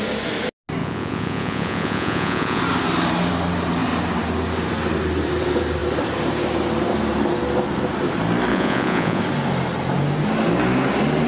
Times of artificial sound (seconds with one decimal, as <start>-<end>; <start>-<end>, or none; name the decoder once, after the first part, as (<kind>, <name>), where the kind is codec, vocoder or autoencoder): 0.8-2.6 (vocoder, Vocos); 8.5-9.2